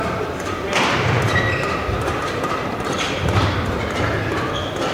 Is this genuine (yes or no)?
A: yes